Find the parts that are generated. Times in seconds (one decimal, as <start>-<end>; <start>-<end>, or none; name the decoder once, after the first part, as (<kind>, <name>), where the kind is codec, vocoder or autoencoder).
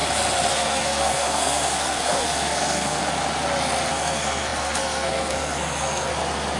0.5-3.0 (codec, SNAC); 3.9-6.1